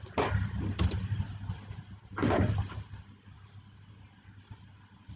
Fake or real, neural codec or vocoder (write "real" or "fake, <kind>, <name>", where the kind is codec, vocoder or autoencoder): real